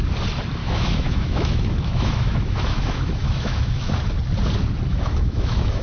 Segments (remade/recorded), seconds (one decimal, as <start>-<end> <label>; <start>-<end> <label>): 0.0-0.6 recorded; 0.6-3.9 remade; 3.9-4.9 recorded; 4.9-5.8 remade

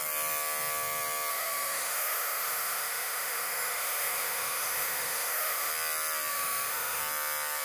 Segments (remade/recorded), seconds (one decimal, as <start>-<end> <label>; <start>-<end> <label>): 0.0-1.3 recorded; 1.3-5.7 remade; 5.7-6.3 recorded; 6.3-7.0 remade; 7.0-7.6 recorded

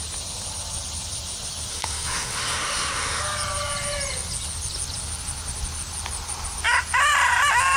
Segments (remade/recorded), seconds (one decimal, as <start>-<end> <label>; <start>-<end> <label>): 0.0-1.7 recorded; 1.7-3.2 remade; 3.2-7.8 recorded

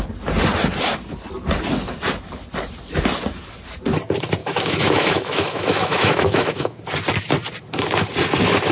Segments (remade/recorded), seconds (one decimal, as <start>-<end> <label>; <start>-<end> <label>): 0.0-4.4 recorded; 4.4-6.8 remade; 6.8-8.7 recorded

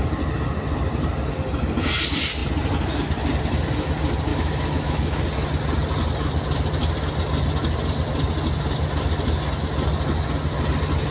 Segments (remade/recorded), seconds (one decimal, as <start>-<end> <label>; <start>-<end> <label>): 0.0-4.3 recorded; 4.3-5.2 remade; 5.2-11.1 recorded

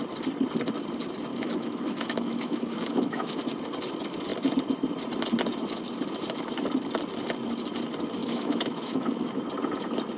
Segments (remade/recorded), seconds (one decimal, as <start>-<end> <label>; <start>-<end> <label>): 0.0-1.3 recorded; 1.3-3.4 remade; 3.4-8.2 recorded; 8.2-9.4 remade; 9.4-10.2 recorded

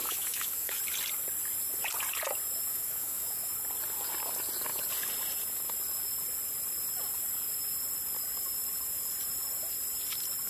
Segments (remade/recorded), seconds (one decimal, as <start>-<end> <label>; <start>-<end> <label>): 0.0-0.8 remade; 0.8-2.7 recorded; 2.7-3.5 remade; 3.5-10.5 recorded

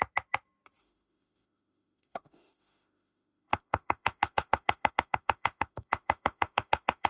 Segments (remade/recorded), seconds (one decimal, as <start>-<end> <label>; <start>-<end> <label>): 0.0-0.8 recorded; 0.8-7.1 remade